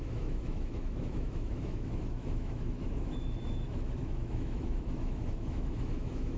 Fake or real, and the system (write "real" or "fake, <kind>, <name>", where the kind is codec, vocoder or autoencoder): fake, autoencoder, DAC-VAE